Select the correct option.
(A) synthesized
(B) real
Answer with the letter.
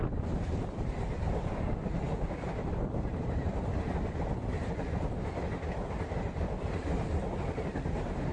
B